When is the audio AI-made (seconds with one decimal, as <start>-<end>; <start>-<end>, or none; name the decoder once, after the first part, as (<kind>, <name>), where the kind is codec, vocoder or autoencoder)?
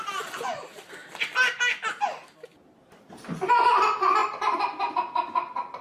4.2-4.9 (vocoder, BigVGAN v2)